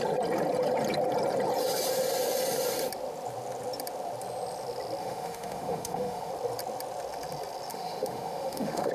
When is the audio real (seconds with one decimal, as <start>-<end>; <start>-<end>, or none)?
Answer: 0.0-5.0; 6.3-7.7